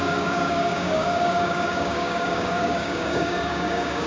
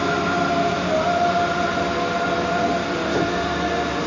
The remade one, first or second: first